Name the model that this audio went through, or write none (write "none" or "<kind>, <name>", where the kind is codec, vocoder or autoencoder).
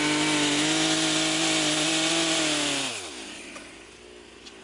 none